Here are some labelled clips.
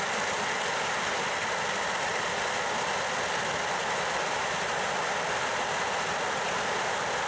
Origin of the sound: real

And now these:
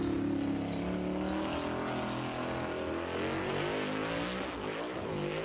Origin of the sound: real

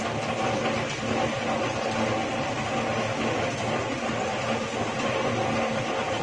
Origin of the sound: fake